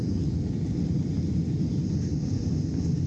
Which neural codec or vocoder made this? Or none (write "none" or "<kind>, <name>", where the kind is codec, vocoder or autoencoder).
vocoder, BigVGAN v2